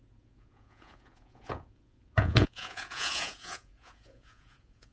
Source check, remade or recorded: remade